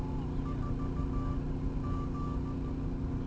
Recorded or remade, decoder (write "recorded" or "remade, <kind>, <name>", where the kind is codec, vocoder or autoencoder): recorded